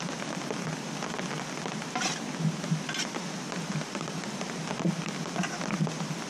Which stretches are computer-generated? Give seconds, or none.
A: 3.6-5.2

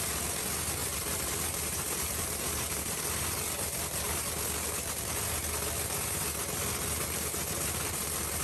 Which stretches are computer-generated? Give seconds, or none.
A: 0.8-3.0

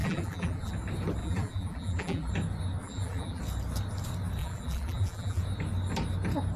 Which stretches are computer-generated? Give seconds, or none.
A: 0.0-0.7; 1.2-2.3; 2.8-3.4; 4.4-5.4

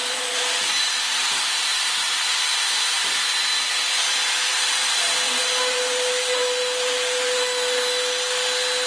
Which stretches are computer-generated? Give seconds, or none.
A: 0.0-2.3; 4.5-5.4

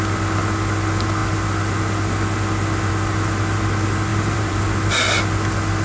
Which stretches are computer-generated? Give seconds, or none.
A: 4.1-4.6

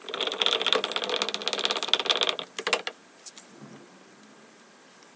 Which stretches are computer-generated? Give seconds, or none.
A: none

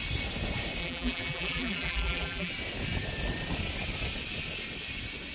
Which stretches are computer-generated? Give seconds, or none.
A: 0.8-2.5

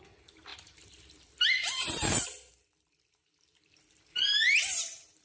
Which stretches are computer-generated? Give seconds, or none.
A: 0.0-4.6